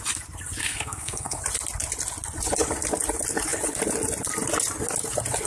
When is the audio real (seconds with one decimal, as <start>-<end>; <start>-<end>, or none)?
0.0-0.6; 1.4-5.5